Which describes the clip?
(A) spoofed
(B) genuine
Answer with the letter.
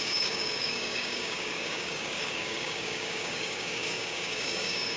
A